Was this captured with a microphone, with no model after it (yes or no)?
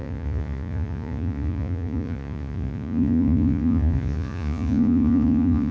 no